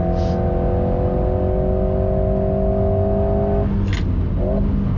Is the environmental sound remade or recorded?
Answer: recorded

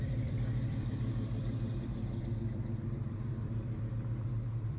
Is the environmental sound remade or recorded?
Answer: remade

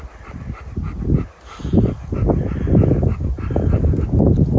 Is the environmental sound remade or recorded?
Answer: recorded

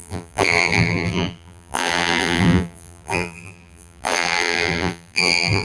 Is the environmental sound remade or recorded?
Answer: remade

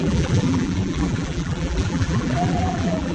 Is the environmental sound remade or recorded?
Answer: remade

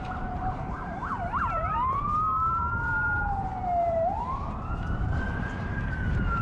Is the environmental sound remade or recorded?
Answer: remade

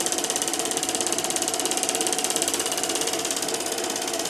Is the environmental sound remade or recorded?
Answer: recorded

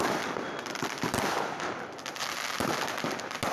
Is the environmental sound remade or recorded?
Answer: recorded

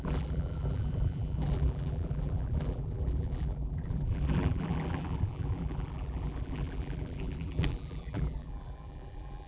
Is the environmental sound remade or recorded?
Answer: remade